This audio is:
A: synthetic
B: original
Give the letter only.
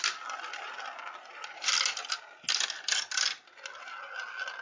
B